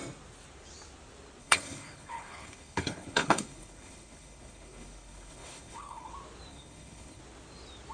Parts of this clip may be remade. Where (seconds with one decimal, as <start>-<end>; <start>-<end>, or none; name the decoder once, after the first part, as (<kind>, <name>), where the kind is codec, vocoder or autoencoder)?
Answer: 1.4-6.1 (codec, HILCodec); 6.5-7.2